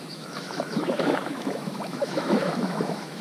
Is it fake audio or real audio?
fake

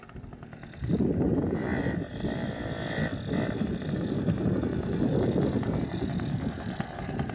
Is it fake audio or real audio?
real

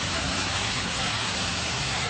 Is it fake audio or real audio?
fake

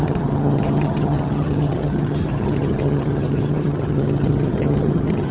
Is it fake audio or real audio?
fake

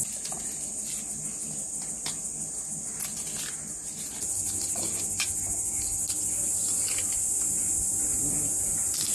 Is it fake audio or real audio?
real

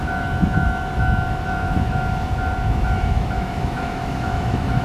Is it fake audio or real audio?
fake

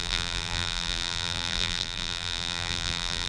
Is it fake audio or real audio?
fake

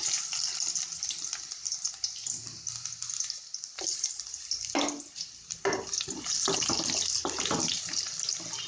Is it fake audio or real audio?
real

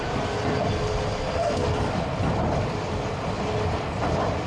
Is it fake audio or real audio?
real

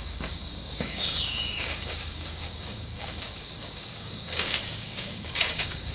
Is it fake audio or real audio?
fake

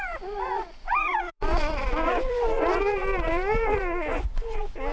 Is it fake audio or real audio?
fake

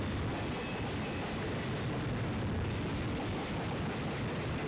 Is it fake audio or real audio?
real